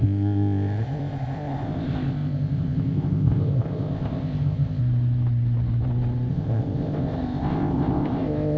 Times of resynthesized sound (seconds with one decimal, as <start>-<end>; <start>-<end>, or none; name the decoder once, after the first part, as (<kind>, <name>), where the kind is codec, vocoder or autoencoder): 0.0-4.8 (codec, ZipCodec); 6.3-8.6